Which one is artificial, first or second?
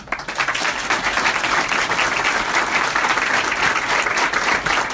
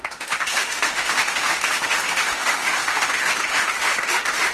second